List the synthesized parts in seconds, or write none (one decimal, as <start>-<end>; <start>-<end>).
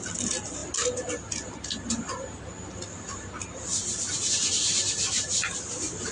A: none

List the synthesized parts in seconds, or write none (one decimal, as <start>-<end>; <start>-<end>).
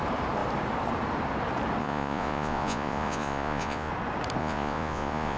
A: 1.8-3.9; 4.4-5.4